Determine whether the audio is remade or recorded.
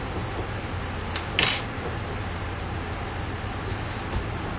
recorded